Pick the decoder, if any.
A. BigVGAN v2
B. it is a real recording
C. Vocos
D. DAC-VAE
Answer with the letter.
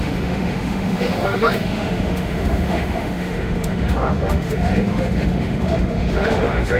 D